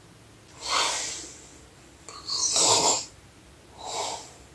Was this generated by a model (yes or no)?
no